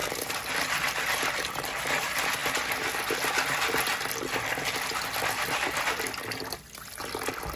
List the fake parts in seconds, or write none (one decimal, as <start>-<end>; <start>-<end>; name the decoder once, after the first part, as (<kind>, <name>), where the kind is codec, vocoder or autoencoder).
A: 0.0-0.5 (vocoder, BigVGAN v2)